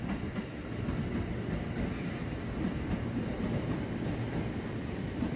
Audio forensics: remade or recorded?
recorded